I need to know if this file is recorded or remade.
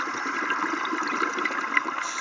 recorded